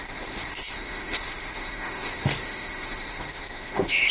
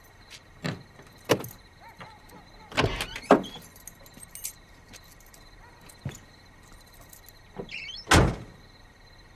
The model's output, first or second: first